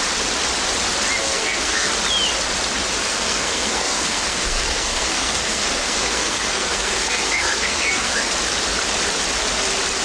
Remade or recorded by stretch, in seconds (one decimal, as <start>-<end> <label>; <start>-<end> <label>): 0.0-1.2 recorded; 1.2-1.9 remade; 1.9-3.0 recorded; 3.0-8.3 remade; 8.3-10.0 recorded